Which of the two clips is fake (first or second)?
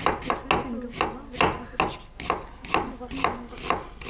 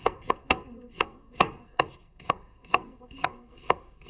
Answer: second